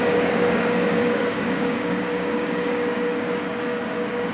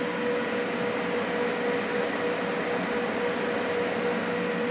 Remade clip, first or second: first